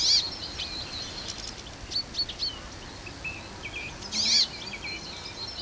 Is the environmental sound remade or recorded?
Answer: recorded